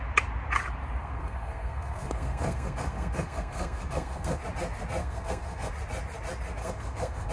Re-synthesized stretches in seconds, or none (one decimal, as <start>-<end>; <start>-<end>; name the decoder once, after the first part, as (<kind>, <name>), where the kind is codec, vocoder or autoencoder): 1.0-4.4 (codec, SNAC); 5.0-5.7; 6.6-7.3